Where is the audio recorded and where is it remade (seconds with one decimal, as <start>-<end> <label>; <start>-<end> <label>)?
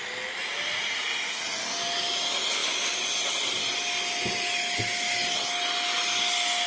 0.0-0.4 recorded; 0.4-1.7 remade; 1.7-6.7 recorded